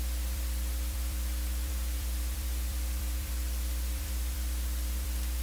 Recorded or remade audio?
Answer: remade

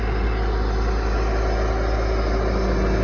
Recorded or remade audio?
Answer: recorded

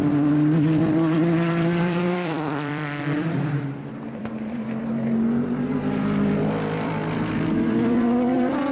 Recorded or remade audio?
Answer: remade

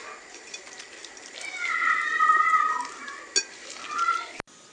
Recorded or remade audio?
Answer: recorded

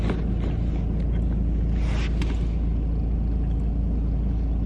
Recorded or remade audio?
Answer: recorded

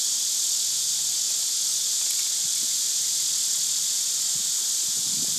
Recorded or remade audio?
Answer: recorded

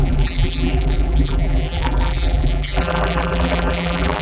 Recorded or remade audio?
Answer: remade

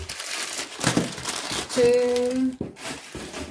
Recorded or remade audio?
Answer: remade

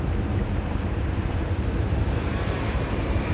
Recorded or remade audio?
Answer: remade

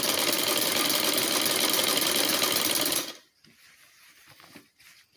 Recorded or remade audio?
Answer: recorded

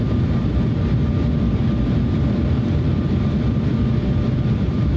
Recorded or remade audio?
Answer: remade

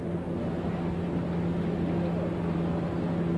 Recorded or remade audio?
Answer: recorded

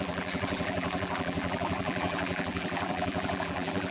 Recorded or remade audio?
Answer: remade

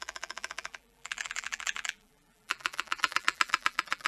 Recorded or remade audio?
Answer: remade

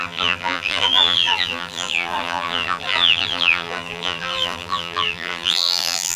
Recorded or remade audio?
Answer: remade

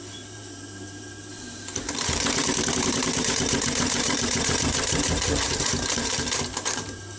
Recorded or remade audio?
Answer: remade